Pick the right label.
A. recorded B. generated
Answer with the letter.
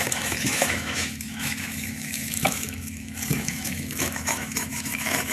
B